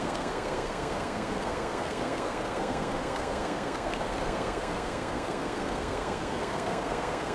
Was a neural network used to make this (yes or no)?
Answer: yes